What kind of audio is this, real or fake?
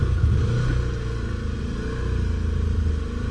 real